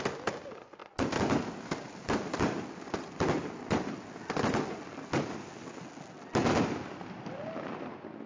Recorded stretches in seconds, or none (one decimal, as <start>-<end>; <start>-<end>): 0.0-8.3